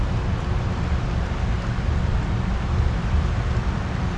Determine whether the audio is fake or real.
real